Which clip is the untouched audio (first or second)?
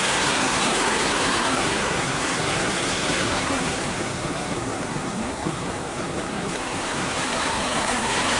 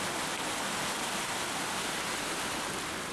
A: second